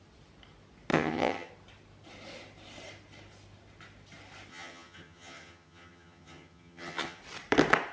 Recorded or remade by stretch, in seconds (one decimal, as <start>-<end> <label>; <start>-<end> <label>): 0.0-0.9 recorded; 0.9-1.5 remade; 1.5-4.5 recorded; 4.5-7.2 remade; 7.2-7.9 recorded